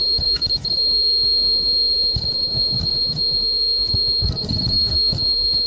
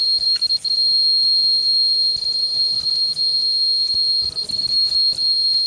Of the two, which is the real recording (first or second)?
second